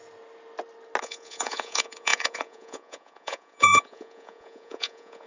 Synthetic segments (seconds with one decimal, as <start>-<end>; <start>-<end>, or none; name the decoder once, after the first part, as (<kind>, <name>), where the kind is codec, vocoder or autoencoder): 1.0-5.3 (vocoder, Vocos)